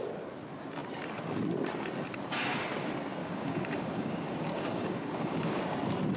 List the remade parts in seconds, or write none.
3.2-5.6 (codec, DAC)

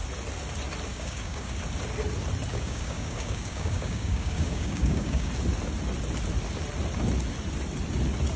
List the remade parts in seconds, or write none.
0.9-1.6 (codec, DAC); 2.5-5.3

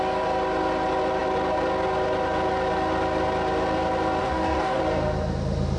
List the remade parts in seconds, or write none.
4.2-4.8 (codec, DAC)

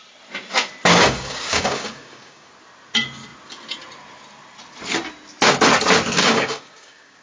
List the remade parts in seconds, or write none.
0.9-2.5 (codec, DAC); 6.2-7.2

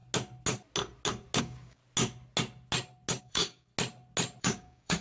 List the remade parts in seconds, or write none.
1.4-1.8 (codec, DAC); 3.2-3.7; 4.4-5.0

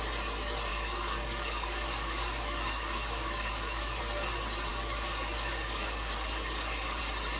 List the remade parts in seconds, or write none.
0.7-4.0 (codec, DAC); 4.7-7.0